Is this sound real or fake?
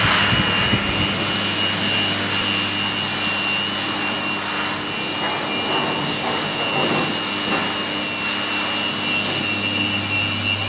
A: real